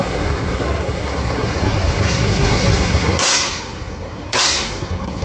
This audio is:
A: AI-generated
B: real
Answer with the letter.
A